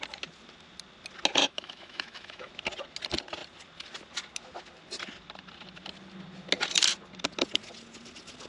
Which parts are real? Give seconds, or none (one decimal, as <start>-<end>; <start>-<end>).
0.0-1.4; 2.5-8.5